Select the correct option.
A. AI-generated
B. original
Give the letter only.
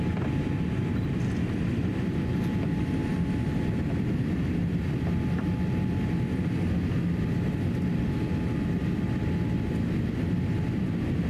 B